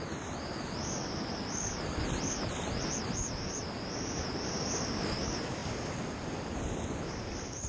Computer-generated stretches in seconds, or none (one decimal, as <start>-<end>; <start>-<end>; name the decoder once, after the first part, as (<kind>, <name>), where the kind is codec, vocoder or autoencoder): 5.6-7.0 (vocoder, BigVGAN v2)